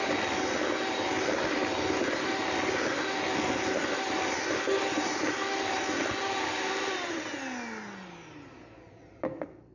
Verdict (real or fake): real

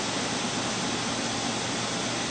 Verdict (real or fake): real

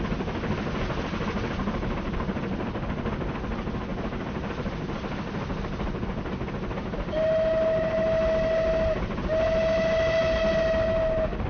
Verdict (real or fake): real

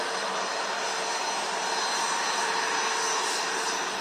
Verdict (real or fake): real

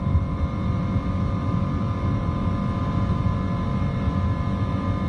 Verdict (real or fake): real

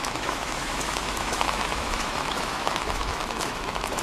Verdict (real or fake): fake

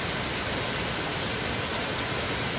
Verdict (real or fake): real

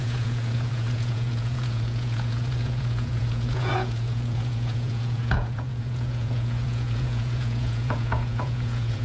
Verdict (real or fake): fake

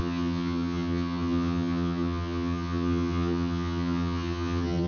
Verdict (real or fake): fake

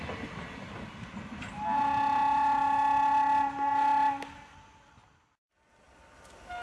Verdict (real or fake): real